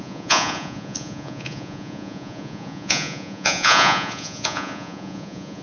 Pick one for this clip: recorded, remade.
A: remade